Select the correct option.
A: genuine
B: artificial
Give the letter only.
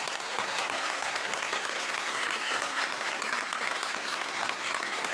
B